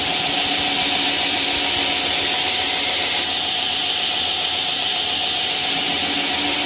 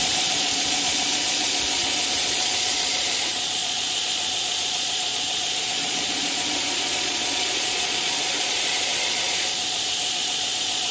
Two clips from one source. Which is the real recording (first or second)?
first